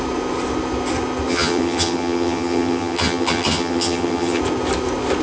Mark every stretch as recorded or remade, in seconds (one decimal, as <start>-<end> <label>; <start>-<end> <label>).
0.0-1.3 recorded; 1.3-4.4 remade; 4.4-5.2 recorded